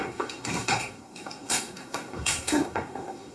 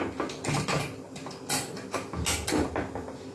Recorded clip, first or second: second